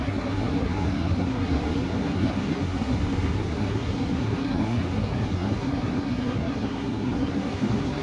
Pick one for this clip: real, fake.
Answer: fake